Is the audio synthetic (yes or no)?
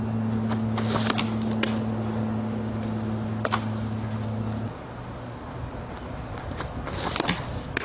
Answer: no